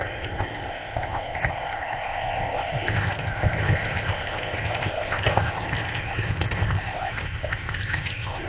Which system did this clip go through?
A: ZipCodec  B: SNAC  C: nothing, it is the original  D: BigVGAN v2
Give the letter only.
A